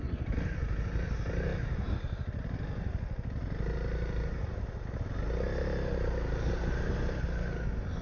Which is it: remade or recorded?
recorded